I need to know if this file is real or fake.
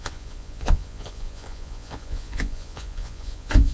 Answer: fake